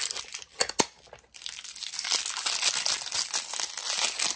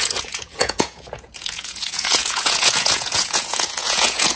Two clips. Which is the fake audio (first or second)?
second